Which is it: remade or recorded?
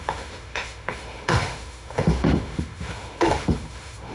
remade